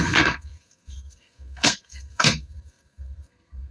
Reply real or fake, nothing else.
fake